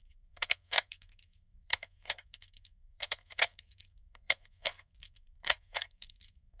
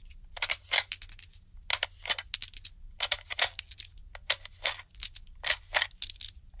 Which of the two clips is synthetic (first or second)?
first